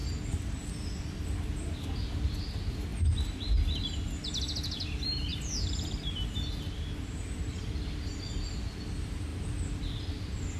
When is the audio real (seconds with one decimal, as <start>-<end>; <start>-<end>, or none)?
0.0-10.6

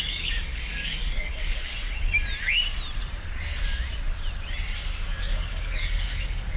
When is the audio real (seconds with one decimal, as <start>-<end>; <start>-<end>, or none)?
1.7-5.2

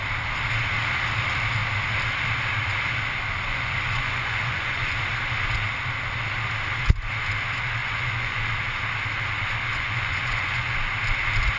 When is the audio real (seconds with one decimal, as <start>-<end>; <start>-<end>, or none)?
0.0-3.5; 4.9-7.8; 8.4-9.7; 10.8-11.6

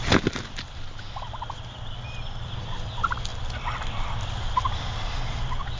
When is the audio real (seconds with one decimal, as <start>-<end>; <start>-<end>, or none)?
0.0-5.8

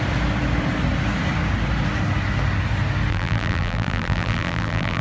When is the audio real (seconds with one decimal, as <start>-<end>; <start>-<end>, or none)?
0.0-3.1

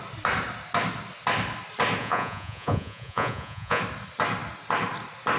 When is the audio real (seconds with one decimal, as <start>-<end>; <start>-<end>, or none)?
0.0-2.0; 3.8-5.4

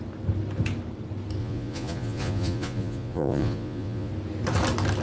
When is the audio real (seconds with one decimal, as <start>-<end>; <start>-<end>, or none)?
0.0-1.4; 4.1-5.0

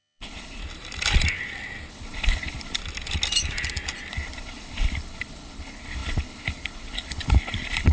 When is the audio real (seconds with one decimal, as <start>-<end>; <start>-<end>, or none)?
0.6-1.9; 2.8-4.1